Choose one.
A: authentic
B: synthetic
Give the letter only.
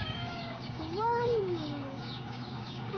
B